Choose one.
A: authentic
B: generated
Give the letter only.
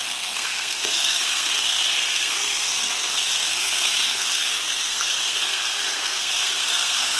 B